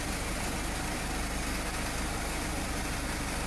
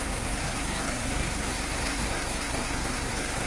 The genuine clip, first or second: first